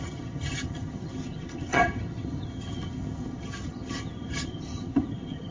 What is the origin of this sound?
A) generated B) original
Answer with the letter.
A